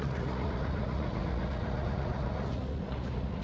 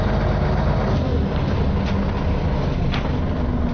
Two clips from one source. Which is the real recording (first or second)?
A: second